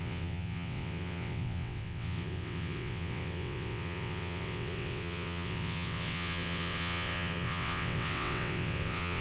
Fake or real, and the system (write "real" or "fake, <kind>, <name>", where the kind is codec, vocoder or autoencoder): fake, vocoder, WaveNeXt